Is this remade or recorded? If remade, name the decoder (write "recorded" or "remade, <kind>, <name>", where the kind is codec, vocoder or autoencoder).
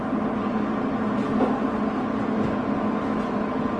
recorded